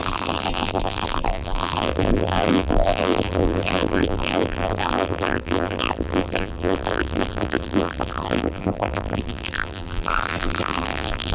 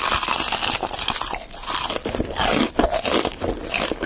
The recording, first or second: second